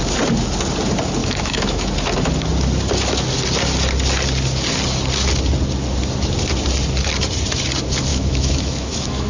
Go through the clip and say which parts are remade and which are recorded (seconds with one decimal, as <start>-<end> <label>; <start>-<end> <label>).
0.0-1.2 recorded; 1.2-1.9 remade; 1.9-8.1 recorded; 8.1-9.3 remade